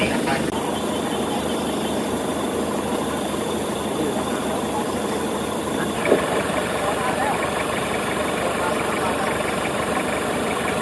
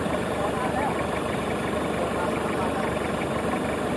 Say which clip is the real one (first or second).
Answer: second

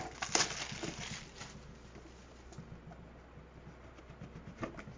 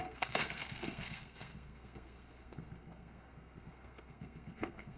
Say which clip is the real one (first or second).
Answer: first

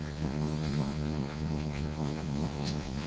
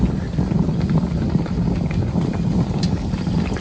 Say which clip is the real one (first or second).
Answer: second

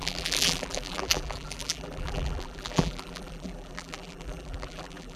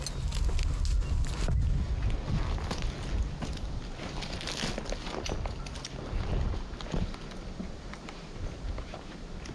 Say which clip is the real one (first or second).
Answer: second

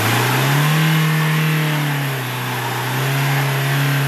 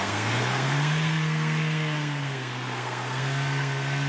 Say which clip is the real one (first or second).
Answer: first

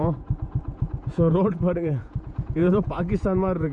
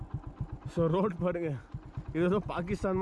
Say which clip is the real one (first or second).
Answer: second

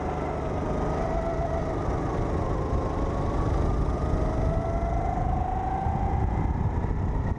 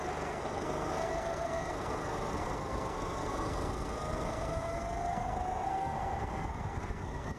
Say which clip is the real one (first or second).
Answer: first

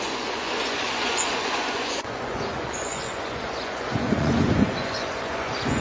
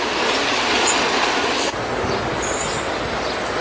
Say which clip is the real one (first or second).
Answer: second